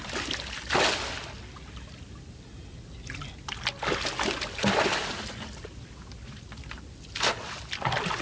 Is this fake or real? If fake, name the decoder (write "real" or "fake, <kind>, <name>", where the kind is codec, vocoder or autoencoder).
real